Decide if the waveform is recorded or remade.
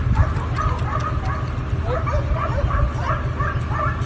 recorded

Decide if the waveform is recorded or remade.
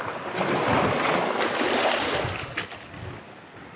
recorded